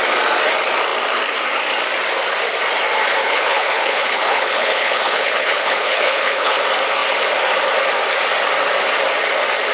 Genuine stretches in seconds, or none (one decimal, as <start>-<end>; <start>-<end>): 0.0-3.2; 6.6-9.7